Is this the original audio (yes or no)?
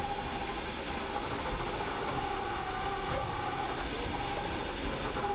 yes